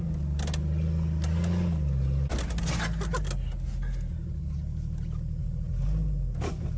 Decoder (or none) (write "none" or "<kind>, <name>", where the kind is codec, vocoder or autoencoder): none